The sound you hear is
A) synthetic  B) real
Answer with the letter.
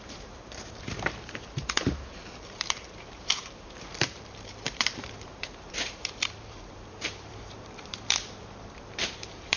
A